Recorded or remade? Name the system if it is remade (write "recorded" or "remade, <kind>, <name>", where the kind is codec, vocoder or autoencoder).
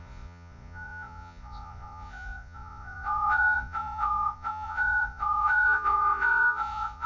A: remade, vocoder, Vocos